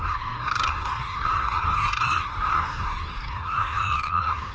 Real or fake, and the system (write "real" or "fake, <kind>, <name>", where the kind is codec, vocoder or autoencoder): fake, codec, SNAC